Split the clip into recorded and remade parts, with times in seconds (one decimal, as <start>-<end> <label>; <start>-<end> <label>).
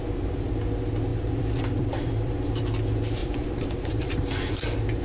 0.0-1.1 recorded; 1.1-2.6 remade; 2.6-3.2 recorded; 3.2-4.2 remade; 4.2-5.0 recorded